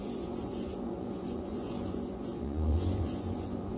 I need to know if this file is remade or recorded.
remade